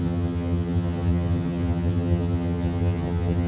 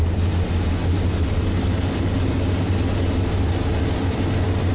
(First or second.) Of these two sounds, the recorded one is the second